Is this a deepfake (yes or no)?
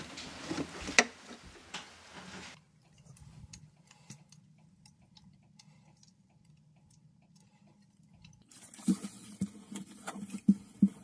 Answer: no